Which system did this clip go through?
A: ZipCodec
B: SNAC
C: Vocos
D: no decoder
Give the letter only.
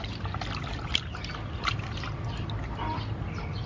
D